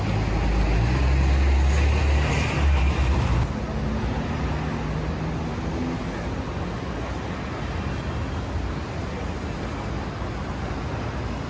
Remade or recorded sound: recorded